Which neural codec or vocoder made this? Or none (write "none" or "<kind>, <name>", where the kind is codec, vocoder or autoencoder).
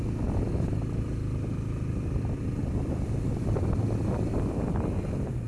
none